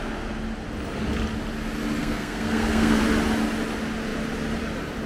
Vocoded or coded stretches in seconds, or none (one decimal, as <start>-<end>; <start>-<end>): 2.0-3.0